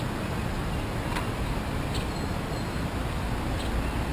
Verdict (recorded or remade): recorded